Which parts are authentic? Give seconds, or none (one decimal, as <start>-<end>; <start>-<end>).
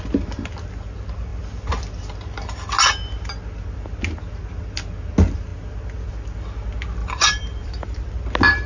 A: 0.0-7.0; 8.1-8.7